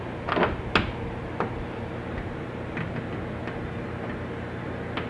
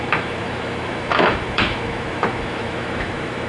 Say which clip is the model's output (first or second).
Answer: second